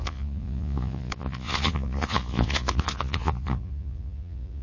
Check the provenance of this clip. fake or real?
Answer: fake